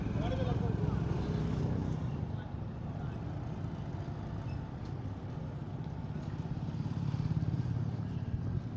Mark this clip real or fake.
real